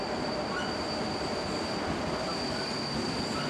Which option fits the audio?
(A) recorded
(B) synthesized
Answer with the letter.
A